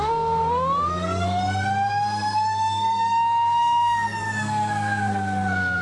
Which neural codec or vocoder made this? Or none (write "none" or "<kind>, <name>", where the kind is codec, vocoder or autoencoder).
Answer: codec, SNAC